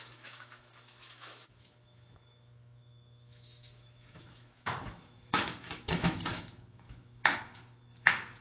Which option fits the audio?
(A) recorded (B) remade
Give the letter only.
B